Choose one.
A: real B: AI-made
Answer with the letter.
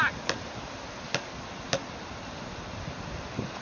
A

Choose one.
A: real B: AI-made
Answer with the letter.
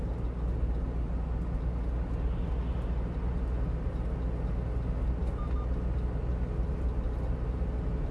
A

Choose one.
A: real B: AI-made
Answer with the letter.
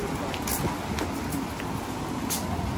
A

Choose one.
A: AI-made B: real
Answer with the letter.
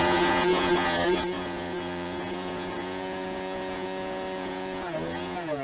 A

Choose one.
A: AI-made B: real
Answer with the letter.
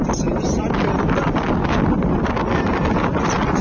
B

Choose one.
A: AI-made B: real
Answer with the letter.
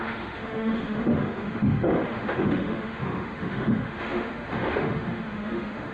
A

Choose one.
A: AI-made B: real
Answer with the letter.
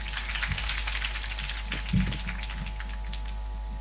B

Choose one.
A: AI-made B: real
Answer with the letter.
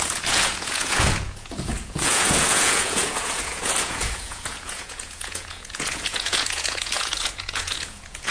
A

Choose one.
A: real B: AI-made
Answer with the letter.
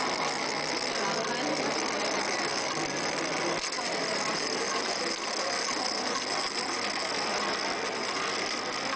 A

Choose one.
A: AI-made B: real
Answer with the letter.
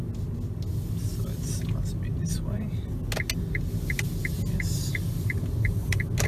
B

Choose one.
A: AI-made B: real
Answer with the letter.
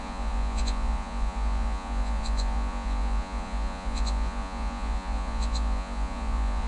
A